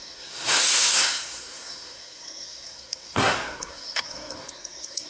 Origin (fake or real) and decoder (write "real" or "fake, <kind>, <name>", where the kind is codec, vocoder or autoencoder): fake, codec, SNAC